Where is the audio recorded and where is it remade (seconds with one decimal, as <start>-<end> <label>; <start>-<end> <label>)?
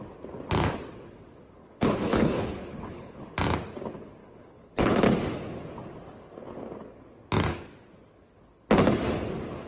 0.0-1.6 recorded; 1.6-3.2 remade; 3.2-4.2 recorded; 4.2-5.0 remade; 5.0-9.7 recorded